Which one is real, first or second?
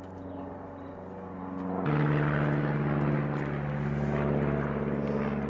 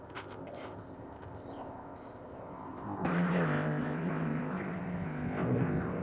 first